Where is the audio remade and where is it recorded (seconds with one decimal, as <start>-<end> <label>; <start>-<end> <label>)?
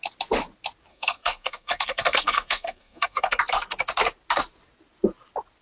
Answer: 0.0-0.9 recorded; 0.9-3.4 remade; 3.4-5.6 recorded